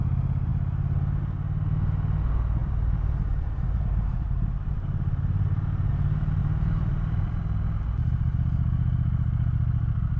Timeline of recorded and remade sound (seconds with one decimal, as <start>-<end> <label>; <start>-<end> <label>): 0.0-2.6 recorded; 2.6-5.9 remade; 5.9-6.4 recorded; 6.4-7.4 remade; 7.4-10.2 recorded